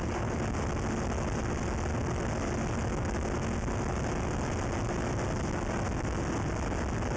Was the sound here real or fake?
real